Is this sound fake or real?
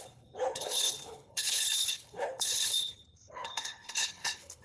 fake